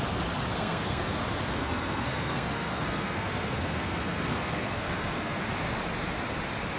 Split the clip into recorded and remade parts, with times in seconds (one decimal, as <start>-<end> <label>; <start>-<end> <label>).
0.0-0.5 recorded; 0.5-1.2 remade; 1.2-1.6 recorded; 1.6-5.4 remade; 5.4-6.8 recorded